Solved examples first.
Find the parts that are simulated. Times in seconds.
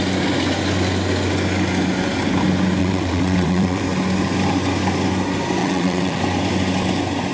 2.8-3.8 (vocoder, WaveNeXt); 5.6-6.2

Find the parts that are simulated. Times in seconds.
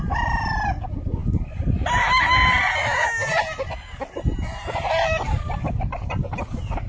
none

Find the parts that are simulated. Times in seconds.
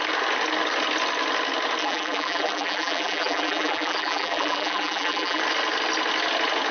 1.8-5.4 (vocoder, BigVGAN v2)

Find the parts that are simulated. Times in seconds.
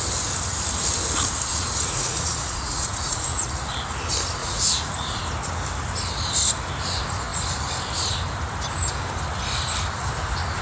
1.5-3.5 (vocoder, Vocos); 4.4-5.2